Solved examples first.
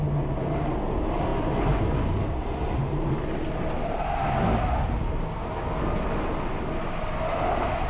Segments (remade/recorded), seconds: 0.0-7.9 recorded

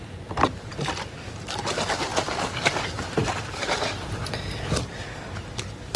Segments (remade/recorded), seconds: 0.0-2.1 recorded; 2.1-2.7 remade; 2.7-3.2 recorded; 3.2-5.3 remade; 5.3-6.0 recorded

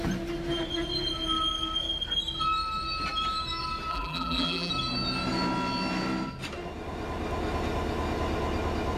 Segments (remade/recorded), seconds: 0.0-3.9 recorded; 3.9-4.7 remade; 4.7-9.0 recorded

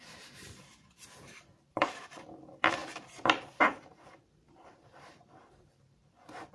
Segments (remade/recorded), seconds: 0.0-6.5 remade